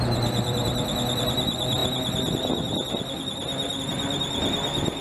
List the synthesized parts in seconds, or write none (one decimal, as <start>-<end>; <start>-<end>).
0.0-1.8; 3.8-5.0